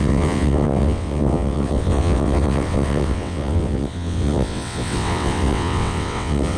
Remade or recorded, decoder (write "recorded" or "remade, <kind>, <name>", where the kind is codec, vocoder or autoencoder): remade, vocoder, WaveNeXt